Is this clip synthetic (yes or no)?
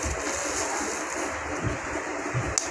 no